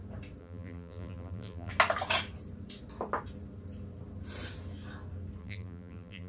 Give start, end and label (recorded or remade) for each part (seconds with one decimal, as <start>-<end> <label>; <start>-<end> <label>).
0.0-0.4 recorded; 0.4-1.7 remade; 1.7-5.4 recorded; 5.4-6.3 remade